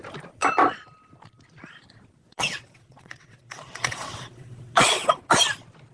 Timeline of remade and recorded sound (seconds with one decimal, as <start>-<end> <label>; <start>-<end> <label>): 0.0-2.2 recorded; 2.2-5.3 remade; 5.3-5.9 recorded